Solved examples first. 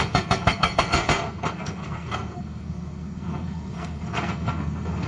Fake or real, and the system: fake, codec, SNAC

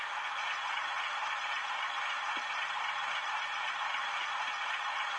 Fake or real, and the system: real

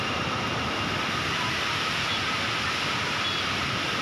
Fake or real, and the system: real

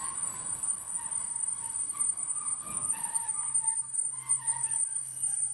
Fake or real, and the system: fake, codec, DAC